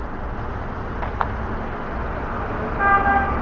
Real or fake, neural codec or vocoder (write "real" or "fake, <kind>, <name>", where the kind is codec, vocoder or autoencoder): real